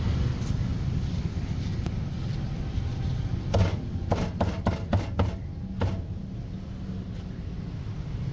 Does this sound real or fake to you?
real